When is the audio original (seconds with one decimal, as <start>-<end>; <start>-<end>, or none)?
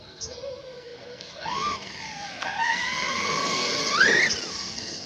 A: 3.8-4.5